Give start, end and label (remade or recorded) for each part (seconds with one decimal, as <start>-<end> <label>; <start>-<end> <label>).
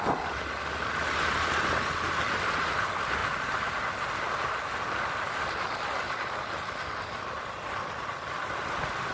0.0-9.1 recorded